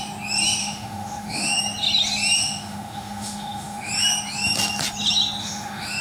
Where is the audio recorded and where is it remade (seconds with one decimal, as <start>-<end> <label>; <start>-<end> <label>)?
0.0-0.6 recorded; 0.6-1.6 remade; 1.6-2.4 recorded; 2.4-3.9 remade; 3.9-5.4 recorded; 5.4-6.0 remade